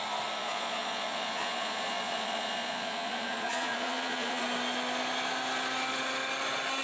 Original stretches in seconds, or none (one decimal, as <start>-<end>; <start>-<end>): 0.0-0.4; 4.4-6.8